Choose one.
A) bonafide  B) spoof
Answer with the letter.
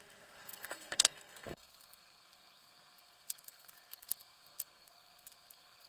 B